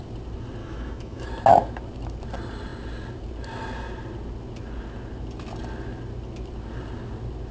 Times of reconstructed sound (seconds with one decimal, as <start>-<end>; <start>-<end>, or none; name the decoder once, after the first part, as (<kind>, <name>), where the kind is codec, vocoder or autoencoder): 0.6-1.3 (autoencoder, DAC-VAE)